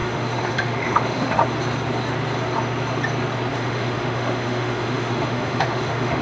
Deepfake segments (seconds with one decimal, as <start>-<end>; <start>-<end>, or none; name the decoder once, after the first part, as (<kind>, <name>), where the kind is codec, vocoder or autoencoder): 0.0-1.4 (autoencoder, DAC-VAE); 3.5-6.2